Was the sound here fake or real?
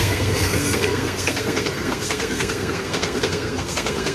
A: fake